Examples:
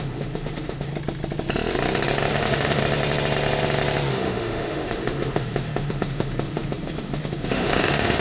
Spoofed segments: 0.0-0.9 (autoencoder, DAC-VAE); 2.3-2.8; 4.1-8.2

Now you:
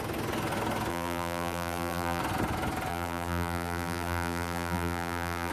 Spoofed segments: 0.9-2.2 (vocoder, BigVGAN v2); 2.9-5.5

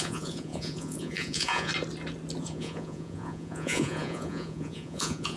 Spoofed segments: 0.0-1.7 (vocoder, Vocos); 2.4-5.4